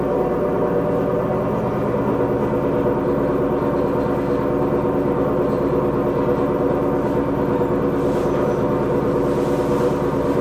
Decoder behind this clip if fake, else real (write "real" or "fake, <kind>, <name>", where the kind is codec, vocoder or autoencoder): real